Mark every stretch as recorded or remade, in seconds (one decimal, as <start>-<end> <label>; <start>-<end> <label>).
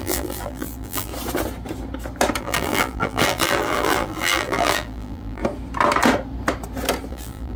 0.0-1.1 remade; 1.1-2.4 recorded; 2.4-5.4 remade; 5.4-7.1 recorded; 7.1-7.6 remade